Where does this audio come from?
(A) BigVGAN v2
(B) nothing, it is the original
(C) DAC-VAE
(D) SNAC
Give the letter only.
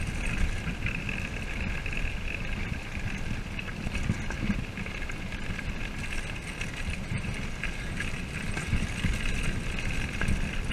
B